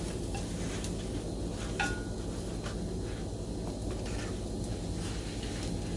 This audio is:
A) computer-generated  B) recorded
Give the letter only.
B